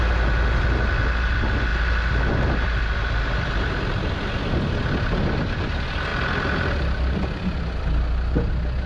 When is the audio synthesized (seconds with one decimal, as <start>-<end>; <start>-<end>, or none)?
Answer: none